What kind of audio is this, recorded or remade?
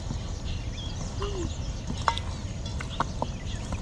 recorded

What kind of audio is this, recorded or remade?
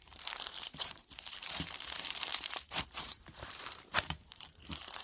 remade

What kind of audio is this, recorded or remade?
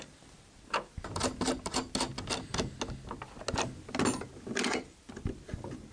recorded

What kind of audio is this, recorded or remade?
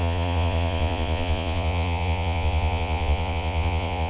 remade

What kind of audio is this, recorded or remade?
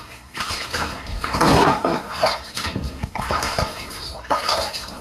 remade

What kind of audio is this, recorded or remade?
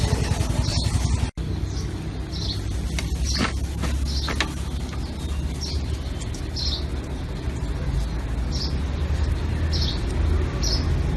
recorded